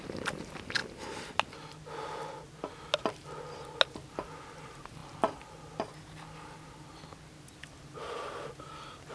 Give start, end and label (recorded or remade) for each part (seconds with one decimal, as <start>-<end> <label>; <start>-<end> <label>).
0.0-9.1 recorded